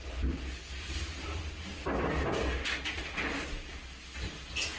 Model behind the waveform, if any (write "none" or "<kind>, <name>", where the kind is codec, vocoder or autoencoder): none